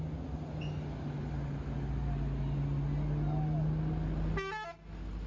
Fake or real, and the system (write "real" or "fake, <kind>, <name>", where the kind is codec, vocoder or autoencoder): real